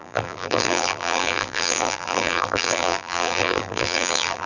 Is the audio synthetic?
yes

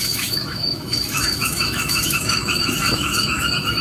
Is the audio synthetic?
yes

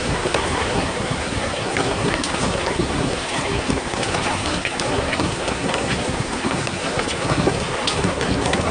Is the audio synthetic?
yes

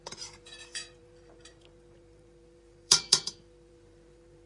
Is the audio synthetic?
yes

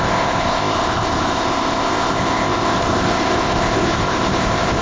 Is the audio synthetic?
yes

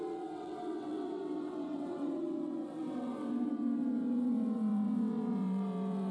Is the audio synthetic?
yes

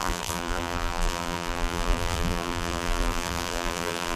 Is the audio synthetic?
yes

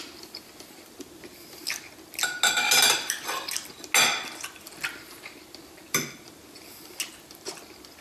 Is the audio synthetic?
no